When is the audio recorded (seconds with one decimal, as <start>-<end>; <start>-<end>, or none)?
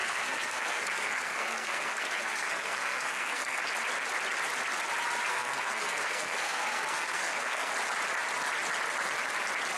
3.6-5.3; 7.7-9.8